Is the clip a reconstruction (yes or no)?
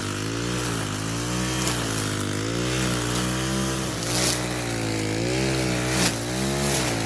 no